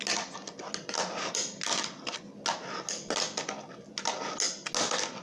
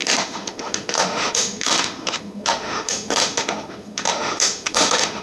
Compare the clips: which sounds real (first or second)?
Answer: first